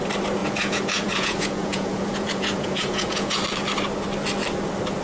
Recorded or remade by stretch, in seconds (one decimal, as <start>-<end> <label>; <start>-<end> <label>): 0.0-0.4 recorded; 0.4-3.4 remade; 3.4-5.0 recorded